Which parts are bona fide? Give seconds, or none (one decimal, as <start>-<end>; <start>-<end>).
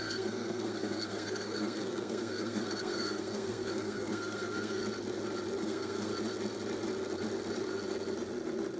4.8-5.6; 6.1-8.8